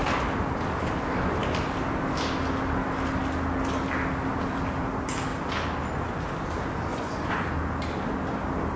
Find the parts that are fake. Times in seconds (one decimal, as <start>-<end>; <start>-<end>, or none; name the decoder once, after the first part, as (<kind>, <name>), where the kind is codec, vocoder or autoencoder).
6.9-7.5 (vocoder, Vocos)